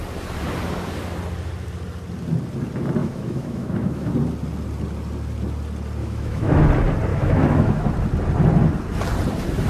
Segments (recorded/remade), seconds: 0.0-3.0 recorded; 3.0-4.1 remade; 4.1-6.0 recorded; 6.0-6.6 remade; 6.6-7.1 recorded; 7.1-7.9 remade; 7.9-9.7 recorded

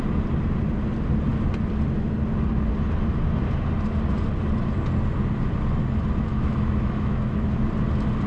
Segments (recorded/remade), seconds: 0.0-6.3 recorded; 6.3-7.5 remade; 7.5-8.3 recorded